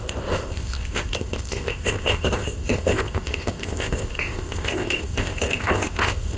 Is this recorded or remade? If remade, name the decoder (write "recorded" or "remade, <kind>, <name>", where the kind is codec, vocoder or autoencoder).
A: remade, codec, ZipCodec